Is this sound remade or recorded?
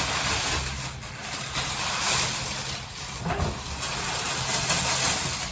recorded